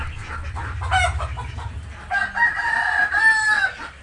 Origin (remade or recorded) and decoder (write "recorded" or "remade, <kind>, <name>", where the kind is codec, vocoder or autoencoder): recorded